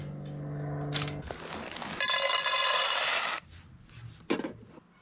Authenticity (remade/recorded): recorded